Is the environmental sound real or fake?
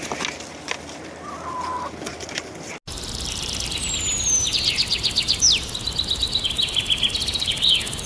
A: real